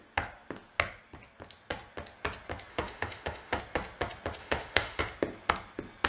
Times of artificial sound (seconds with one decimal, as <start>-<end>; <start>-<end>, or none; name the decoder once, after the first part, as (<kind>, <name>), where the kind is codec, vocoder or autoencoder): 2.7-3.6 (autoencoder, DAC-VAE); 4.4-5.0